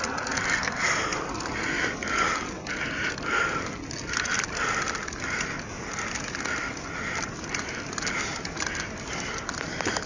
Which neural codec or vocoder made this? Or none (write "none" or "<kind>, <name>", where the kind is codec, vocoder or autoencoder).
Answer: none